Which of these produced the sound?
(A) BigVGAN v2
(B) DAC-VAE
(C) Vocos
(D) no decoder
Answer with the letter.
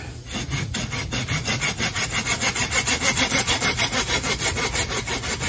D